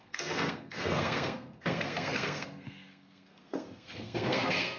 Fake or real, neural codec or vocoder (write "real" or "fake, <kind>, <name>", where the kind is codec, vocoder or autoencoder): fake, codec, SNAC